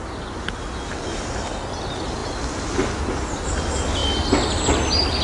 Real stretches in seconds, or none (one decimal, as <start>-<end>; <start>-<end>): 0.0-5.2